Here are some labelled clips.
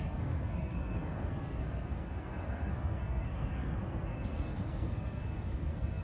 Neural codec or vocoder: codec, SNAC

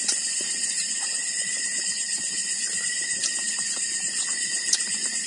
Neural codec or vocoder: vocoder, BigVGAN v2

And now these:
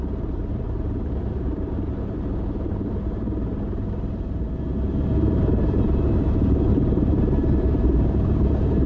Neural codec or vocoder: vocoder, BigVGAN v2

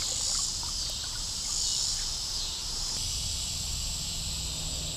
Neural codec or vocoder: none